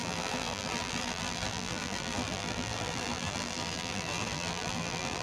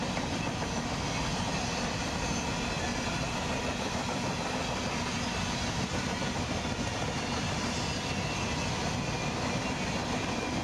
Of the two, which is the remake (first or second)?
first